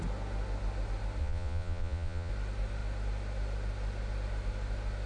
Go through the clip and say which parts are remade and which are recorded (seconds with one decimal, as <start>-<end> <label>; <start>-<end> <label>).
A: 0.0-1.2 recorded; 1.2-2.3 remade; 2.3-5.1 recorded